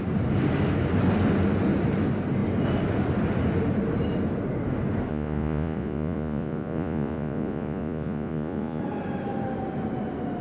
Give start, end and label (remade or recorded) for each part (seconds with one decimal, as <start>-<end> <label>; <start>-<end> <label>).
0.0-5.1 recorded; 5.1-8.8 remade; 8.8-10.4 recorded